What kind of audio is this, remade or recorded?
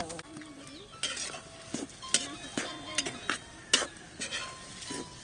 recorded